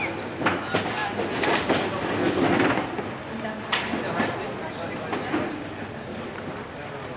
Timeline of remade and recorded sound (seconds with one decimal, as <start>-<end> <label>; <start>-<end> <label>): 0.0-7.2 recorded